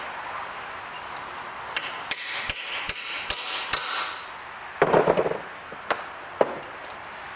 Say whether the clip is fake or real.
real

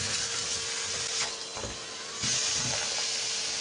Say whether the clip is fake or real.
real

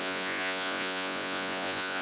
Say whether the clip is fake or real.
fake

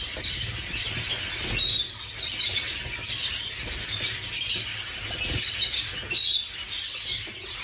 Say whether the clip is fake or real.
real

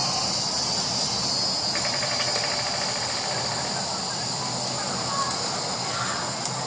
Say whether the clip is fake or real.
real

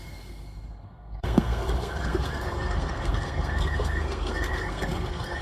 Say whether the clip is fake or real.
fake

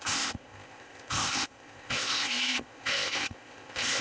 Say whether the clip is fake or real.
fake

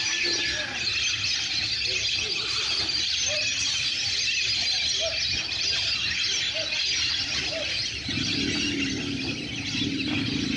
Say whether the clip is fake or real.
real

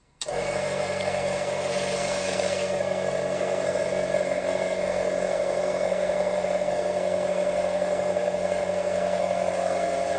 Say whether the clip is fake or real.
fake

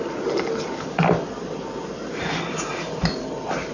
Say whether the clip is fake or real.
real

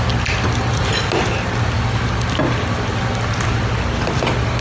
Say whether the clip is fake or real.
real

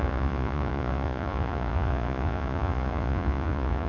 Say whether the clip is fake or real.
fake